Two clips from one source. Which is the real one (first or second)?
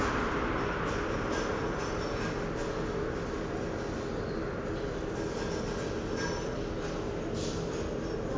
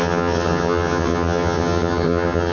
first